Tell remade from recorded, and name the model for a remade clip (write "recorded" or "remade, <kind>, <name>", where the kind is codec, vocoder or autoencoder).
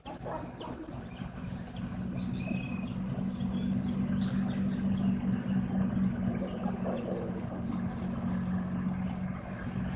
recorded